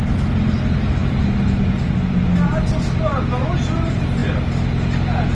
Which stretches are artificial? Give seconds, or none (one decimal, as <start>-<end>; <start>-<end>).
none